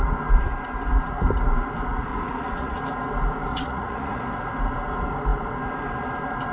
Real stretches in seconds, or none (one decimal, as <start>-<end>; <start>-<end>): 0.0-2.1; 2.8-3.5; 4.2-6.5